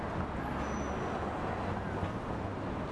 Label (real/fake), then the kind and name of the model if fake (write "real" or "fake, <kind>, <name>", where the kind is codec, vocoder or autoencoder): real